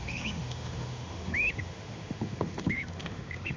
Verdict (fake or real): fake